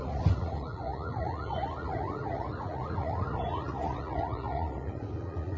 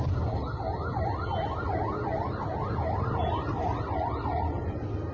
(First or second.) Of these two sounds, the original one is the second